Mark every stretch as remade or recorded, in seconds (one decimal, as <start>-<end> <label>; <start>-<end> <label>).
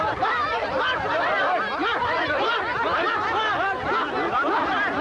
0.0-5.0 recorded